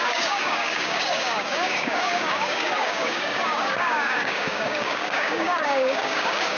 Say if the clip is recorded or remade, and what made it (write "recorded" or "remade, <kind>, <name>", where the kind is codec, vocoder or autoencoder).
remade, codec, DAC